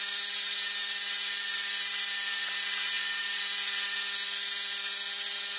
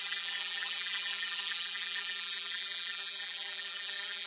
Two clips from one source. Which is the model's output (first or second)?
second